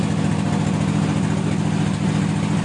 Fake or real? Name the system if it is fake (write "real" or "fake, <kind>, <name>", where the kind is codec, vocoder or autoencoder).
real